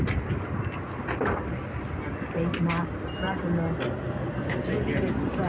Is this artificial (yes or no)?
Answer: no